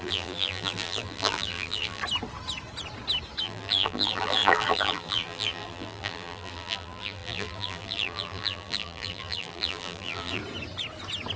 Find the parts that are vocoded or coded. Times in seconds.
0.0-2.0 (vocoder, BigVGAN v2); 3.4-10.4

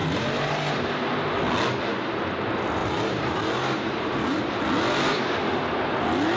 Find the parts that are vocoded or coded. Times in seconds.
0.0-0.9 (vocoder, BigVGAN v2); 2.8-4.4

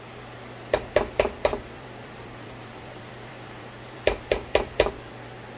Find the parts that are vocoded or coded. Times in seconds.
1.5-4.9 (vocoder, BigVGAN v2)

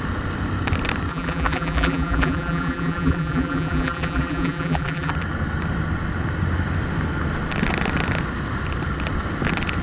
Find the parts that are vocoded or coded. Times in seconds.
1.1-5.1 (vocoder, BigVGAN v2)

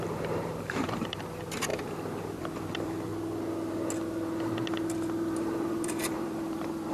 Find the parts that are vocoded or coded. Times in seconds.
0.0-3.1 (vocoder, BigVGAN v2); 5.2-6.9

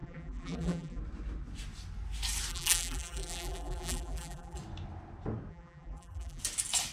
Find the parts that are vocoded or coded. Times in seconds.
0.0-1.0 (vocoder, BigVGAN v2); 2.5-4.6; 5.5-6.4